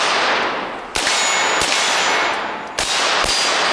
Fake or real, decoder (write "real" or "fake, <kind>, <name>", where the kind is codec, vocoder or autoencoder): real